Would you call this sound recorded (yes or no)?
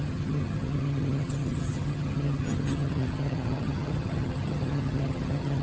no